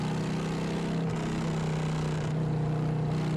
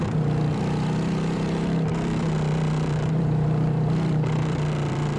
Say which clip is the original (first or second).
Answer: first